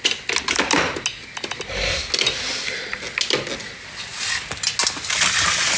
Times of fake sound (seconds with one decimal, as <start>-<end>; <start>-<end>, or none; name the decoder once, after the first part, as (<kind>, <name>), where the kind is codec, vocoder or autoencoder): none